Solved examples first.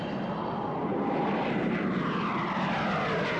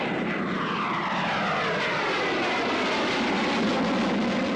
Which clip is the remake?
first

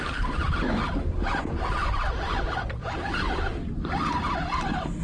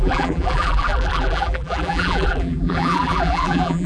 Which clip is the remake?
second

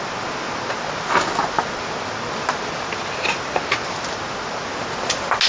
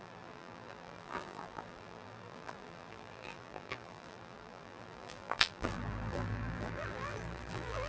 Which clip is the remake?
second